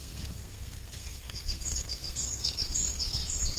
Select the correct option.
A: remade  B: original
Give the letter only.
A